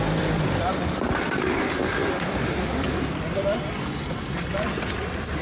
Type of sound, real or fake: fake